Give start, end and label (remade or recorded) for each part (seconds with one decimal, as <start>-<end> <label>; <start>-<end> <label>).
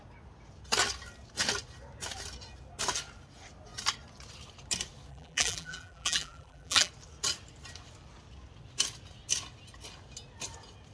0.0-5.1 recorded; 5.1-6.9 remade; 6.9-10.9 recorded